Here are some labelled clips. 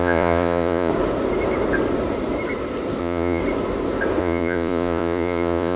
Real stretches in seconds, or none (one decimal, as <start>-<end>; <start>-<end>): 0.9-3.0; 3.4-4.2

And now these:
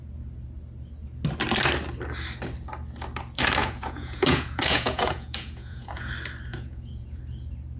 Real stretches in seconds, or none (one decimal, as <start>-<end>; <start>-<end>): 0.0-3.6; 6.1-6.5; 7.2-7.8

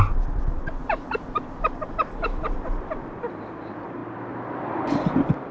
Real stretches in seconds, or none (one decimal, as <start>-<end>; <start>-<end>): 0.8-1.4; 4.0-4.6

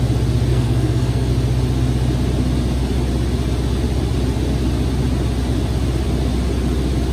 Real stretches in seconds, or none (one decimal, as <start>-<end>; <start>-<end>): 0.0-0.5; 1.3-7.1

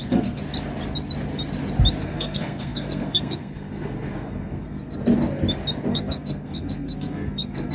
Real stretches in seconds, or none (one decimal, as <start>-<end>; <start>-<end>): 0.4-2.0; 5.0-5.9

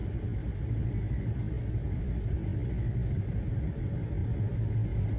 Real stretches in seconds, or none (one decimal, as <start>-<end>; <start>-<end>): 0.0-5.2

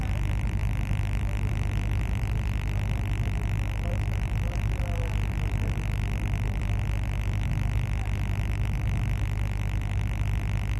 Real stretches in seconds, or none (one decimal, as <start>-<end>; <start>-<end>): 0.0-0.6; 1.5-2.2; 6.6-10.8